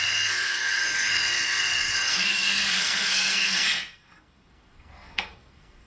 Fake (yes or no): yes